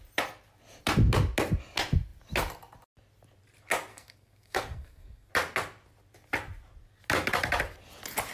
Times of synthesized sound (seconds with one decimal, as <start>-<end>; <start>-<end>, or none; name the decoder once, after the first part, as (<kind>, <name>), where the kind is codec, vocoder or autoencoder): 3.9-5.3 (codec, SNAC)

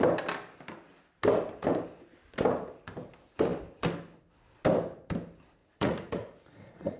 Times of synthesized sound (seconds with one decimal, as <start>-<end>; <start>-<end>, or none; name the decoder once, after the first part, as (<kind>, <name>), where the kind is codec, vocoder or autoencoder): 5.6-7.0 (vocoder, Vocos)